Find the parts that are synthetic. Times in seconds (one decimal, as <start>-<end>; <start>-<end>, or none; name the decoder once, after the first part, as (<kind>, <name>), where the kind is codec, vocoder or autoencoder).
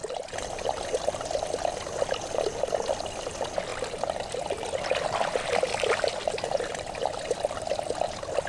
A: none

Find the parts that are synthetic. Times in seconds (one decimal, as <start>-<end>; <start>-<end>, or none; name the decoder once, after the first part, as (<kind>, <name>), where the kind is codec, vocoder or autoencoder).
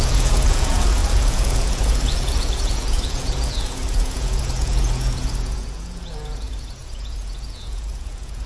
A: 0.0-8.5 (vocoder, Vocos)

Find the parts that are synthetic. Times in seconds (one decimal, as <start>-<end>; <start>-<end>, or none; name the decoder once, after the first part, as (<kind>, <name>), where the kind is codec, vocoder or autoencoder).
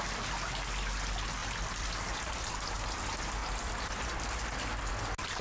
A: 1.4-2.5 (vocoder, BigVGAN v2); 3.4-4.9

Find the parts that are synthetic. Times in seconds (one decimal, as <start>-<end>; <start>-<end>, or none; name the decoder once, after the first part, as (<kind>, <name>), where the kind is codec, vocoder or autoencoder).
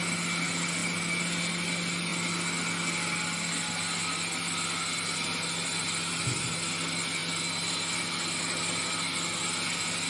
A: none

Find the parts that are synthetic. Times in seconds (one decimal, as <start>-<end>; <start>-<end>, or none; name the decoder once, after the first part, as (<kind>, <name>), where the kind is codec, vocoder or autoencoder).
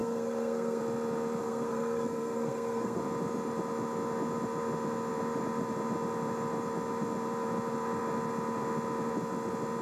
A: 0.0-0.8 (codec, SNAC); 1.4-3.0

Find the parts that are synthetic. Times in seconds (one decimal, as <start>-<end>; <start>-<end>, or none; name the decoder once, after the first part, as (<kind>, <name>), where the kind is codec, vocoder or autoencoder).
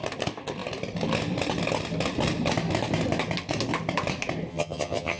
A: 4.5-5.2 (vocoder, HiFi-GAN)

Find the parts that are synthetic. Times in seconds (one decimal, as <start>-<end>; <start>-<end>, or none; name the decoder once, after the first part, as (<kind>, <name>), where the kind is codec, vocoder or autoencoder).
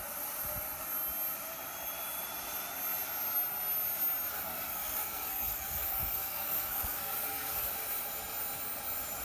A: 4.3-7.7 (codec, SNAC)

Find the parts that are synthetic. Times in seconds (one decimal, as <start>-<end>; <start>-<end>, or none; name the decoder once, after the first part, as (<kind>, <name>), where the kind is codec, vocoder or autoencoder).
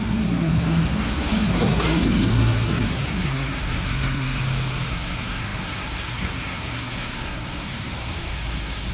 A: 0.0-4.4 (codec, SNAC); 4.9-8.9